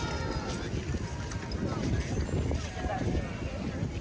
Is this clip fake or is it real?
real